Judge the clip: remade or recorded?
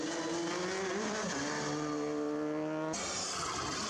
recorded